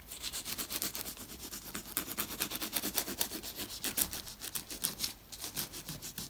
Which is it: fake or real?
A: real